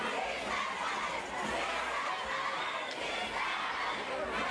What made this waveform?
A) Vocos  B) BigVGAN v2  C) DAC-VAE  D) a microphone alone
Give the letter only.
D